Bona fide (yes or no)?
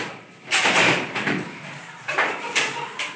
no